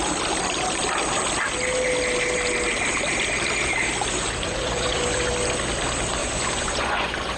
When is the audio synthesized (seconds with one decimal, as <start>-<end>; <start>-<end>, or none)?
4.2-5.3; 6.2-7.4